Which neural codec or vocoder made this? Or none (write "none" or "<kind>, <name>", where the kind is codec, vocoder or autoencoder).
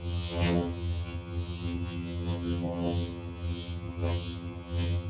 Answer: vocoder, HiFi-GAN